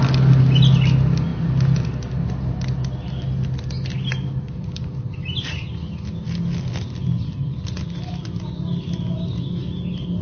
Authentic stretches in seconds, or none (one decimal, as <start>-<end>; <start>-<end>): 0.0-10.2